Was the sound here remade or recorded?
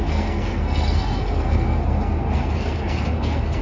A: remade